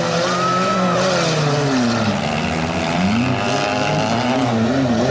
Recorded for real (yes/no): yes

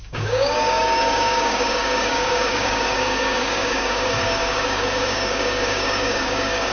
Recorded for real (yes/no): no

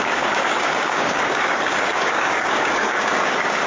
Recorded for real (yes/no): no